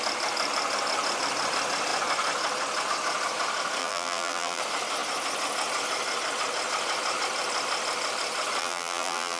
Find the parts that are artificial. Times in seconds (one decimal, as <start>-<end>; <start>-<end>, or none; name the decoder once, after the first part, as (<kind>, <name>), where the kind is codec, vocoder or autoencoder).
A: 3.8-4.6 (vocoder, BigVGAN v2); 8.6-9.4